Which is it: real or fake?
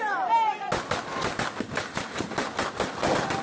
real